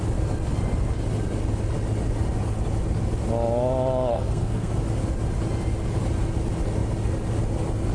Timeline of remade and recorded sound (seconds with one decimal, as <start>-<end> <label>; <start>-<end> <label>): 0.0-4.1 recorded; 4.1-4.7 remade; 4.7-7.9 recorded